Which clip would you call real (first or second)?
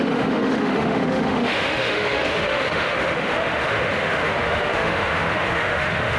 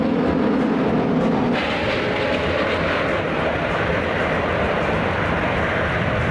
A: second